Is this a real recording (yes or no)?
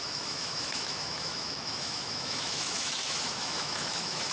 no